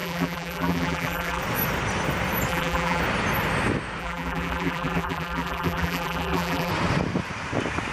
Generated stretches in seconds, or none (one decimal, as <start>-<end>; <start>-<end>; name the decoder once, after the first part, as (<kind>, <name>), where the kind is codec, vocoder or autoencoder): 0.0-1.4 (vocoder, BigVGAN v2); 2.5-3.0; 4.0-6.7